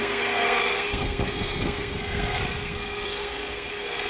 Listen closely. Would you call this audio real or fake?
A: fake